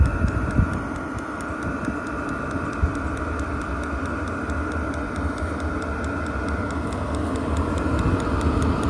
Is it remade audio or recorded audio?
recorded